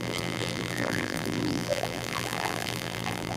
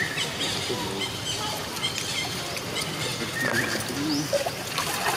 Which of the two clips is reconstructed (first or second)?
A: first